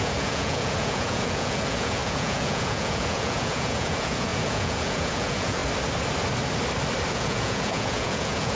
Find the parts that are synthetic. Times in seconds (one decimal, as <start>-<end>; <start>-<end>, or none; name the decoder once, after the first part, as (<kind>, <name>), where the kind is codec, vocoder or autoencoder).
0.0-5.6 (vocoder, Vocos); 7.1-8.6